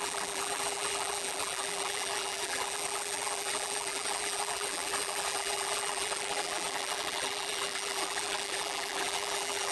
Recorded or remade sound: remade